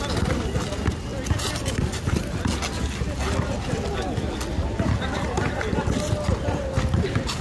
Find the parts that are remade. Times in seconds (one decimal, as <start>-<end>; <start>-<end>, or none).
none